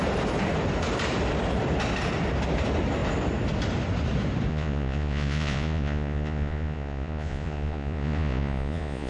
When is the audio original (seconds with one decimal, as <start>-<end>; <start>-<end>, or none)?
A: 0.0-4.5